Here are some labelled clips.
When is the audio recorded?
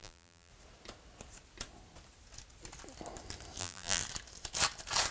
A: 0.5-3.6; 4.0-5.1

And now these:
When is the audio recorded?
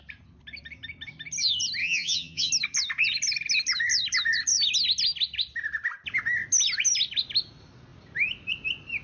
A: 0.0-1.8; 2.5-9.0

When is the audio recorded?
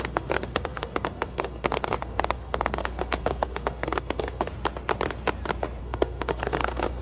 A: 4.5-5.8